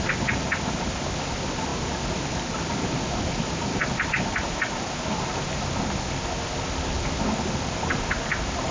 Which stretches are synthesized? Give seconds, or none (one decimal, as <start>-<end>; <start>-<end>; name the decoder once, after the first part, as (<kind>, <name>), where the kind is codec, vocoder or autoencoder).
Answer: none